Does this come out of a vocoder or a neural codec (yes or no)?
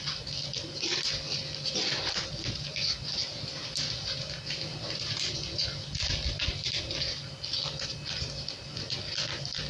no